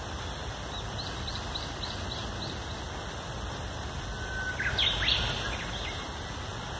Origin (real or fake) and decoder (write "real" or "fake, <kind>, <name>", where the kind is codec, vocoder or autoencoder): real